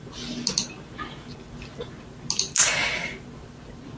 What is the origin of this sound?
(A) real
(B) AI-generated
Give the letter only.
A